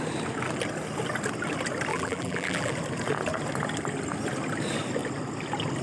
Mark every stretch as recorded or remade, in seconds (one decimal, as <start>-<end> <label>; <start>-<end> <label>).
0.0-1.9 recorded; 1.9-2.7 remade; 2.7-5.8 recorded